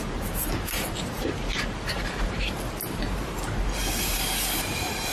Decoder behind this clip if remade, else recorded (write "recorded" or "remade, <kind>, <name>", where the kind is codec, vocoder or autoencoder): remade, vocoder, BigVGAN v2